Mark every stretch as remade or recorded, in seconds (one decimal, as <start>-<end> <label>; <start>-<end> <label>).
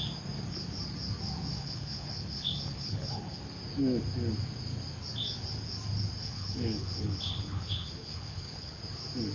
0.0-1.5 recorded; 1.5-3.4 remade; 3.4-6.2 recorded; 6.2-8.8 remade; 8.8-9.3 recorded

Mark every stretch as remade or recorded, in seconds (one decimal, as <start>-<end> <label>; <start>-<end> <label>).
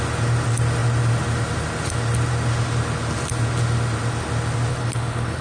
0.0-4.7 recorded; 4.7-5.4 remade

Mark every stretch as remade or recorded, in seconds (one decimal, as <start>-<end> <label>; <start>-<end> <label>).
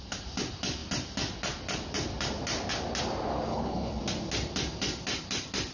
0.0-3.5 recorded; 3.5-4.0 remade; 4.0-5.7 recorded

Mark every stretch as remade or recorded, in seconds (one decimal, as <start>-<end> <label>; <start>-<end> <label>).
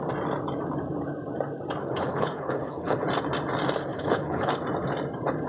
0.0-1.8 recorded; 1.8-3.0 remade; 3.0-3.9 recorded; 3.9-4.5 remade; 4.5-5.5 recorded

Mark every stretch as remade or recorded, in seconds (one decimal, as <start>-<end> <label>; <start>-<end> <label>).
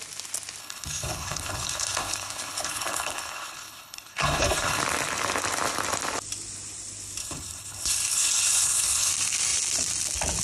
0.0-0.6 recorded; 0.6-4.8 remade; 4.8-7.2 recorded; 7.2-9.1 remade; 9.1-10.4 recorded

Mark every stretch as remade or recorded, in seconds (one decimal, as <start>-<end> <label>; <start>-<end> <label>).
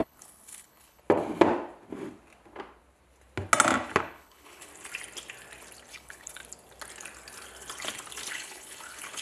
0.0-1.0 remade; 1.0-4.0 recorded; 4.0-4.7 remade; 4.7-5.9 recorded; 5.9-6.4 remade; 6.4-8.3 recorded; 8.3-9.2 remade